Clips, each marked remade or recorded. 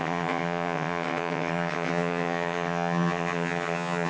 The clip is remade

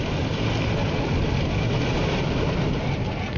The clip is recorded